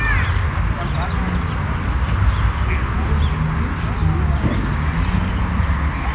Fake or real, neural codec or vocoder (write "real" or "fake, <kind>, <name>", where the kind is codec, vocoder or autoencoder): real